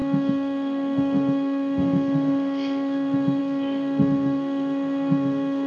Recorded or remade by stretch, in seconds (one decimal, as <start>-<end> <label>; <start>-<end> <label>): 0.0-5.7 remade